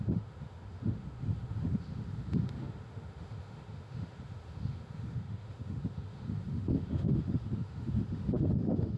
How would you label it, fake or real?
fake